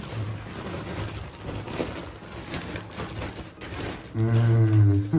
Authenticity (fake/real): real